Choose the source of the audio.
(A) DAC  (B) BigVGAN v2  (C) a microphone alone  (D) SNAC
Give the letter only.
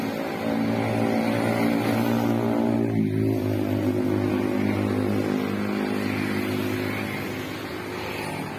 C